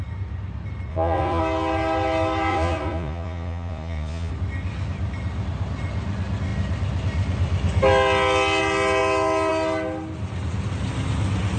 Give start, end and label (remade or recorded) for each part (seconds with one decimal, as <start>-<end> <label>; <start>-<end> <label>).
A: 0.0-0.9 recorded; 0.9-1.4 remade; 1.4-2.5 recorded; 2.5-4.3 remade; 4.3-11.6 recorded